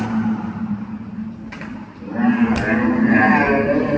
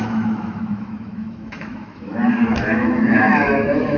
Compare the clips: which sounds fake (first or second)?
second